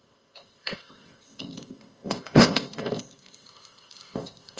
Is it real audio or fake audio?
fake